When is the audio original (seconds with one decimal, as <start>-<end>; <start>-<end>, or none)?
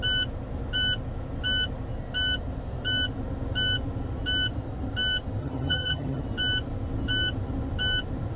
0.0-5.4; 6.2-8.4